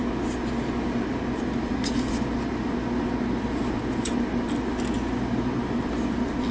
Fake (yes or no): no